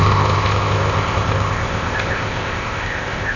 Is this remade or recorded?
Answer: remade